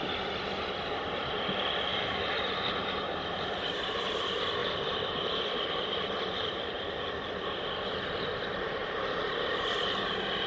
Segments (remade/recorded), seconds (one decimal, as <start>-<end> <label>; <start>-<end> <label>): 0.0-1.9 recorded; 1.9-4.1 remade; 4.1-4.6 recorded; 4.6-6.9 remade; 6.9-10.5 recorded